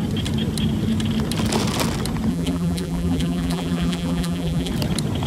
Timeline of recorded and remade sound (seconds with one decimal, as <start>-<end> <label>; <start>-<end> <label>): 0.0-2.3 recorded; 2.3-4.7 remade; 4.7-5.3 recorded